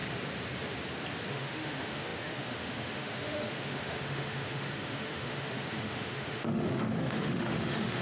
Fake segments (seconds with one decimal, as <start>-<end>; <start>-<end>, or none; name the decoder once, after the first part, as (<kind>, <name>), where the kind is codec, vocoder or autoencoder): 1.3-8.0 (autoencoder, DAC-VAE)